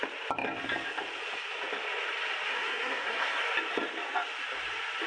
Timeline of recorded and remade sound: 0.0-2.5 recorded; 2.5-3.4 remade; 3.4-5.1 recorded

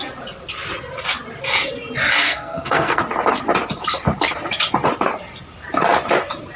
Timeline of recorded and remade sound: 0.0-2.2 recorded; 2.2-3.0 remade; 3.0-6.6 recorded

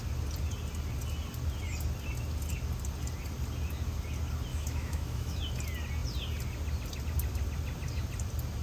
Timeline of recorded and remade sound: 0.0-4.5 recorded; 4.5-5.4 remade; 5.4-8.6 recorded